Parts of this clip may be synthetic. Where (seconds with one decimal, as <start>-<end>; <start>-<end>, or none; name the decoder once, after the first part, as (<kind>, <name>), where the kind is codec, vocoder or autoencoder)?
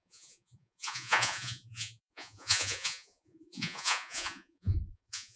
0.0-5.4 (vocoder, Vocos)